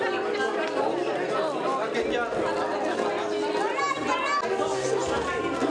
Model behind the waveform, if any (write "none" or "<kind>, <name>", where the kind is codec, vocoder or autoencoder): none